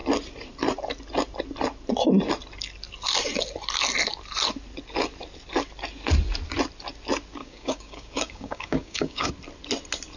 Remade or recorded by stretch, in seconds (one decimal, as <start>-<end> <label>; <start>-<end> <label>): 0.0-7.4 recorded; 7.4-9.3 remade; 9.3-10.2 recorded